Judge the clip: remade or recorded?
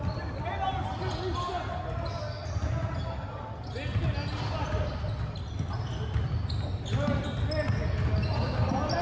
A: recorded